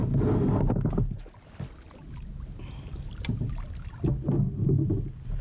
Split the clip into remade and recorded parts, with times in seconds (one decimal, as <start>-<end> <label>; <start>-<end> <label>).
0.0-5.4 recorded